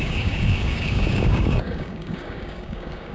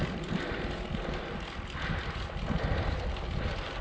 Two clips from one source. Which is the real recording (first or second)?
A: second